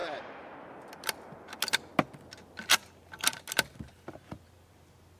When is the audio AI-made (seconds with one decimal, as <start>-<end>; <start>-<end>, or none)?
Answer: none